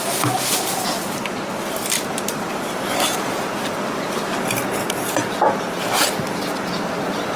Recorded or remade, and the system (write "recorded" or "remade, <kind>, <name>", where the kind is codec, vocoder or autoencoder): recorded